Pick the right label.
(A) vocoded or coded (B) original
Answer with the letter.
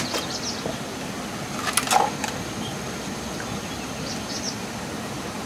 B